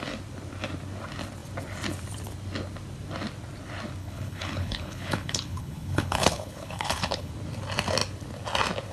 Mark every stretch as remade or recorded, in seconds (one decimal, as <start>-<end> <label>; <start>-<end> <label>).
0.0-4.0 recorded; 4.0-7.3 remade; 7.3-8.9 recorded